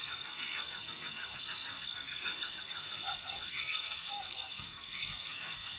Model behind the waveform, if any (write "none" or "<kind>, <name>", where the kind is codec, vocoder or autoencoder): codec, SNAC